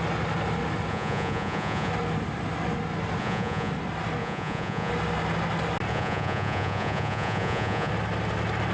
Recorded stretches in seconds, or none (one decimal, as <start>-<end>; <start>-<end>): 0.0-0.9; 1.9-3.2; 3.7-4.2; 4.9-5.9; 7.9-8.7